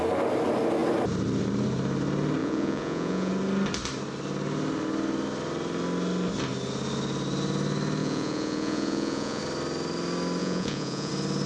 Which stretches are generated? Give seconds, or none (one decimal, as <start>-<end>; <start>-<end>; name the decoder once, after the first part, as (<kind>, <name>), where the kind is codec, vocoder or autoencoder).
2.4-3.3 (vocoder, Vocos); 8.0-9.4; 10.4-11.1